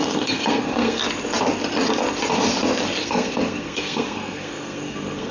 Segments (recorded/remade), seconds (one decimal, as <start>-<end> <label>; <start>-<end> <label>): 0.0-1.0 remade; 1.0-3.0 recorded; 3.0-5.3 remade